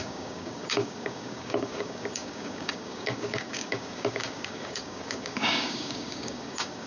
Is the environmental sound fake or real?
fake